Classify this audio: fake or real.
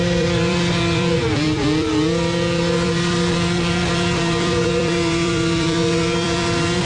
fake